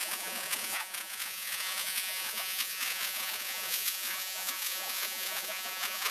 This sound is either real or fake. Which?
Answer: fake